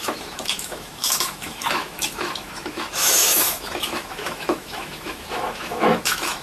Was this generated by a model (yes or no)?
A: yes